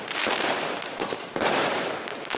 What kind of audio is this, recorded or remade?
remade